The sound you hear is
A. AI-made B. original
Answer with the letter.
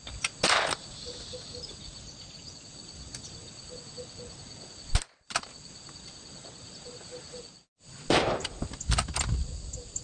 B